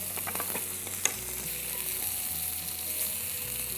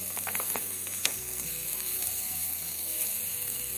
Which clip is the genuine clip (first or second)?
first